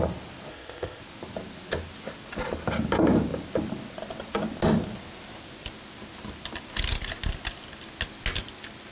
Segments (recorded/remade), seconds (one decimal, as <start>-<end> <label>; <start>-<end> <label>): 0.0-0.5 recorded; 0.5-1.0 remade; 1.0-8.9 recorded